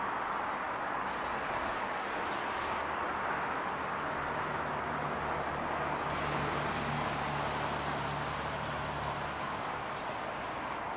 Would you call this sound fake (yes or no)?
no